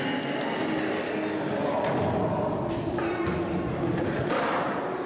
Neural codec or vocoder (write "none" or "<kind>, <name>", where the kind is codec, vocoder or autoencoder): none